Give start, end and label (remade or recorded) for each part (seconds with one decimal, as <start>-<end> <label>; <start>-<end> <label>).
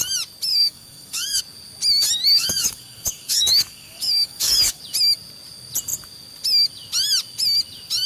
0.0-0.5 recorded; 0.5-1.4 remade; 1.4-2.3 recorded; 2.3-4.8 remade; 4.8-8.1 recorded